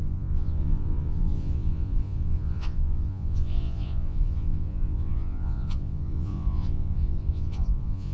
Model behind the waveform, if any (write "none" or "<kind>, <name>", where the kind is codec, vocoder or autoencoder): vocoder, Vocos